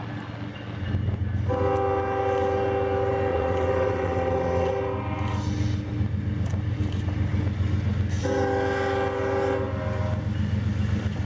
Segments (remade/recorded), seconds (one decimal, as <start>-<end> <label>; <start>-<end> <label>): 0.0-3.3 recorded; 3.3-4.7 remade; 4.7-11.2 recorded